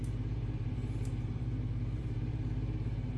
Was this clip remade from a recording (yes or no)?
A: yes